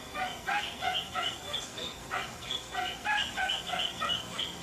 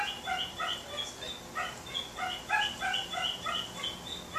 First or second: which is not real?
first